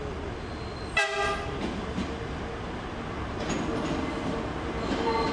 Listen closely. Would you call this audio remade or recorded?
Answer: recorded